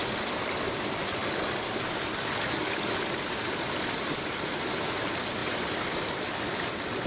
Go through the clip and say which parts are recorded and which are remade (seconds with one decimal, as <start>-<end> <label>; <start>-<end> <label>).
0.0-7.1 recorded